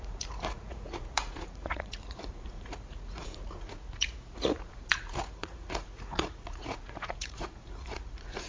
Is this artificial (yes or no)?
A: yes